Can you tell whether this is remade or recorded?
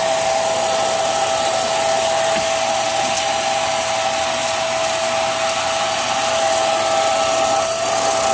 recorded